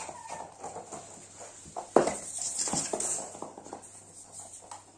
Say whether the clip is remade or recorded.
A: recorded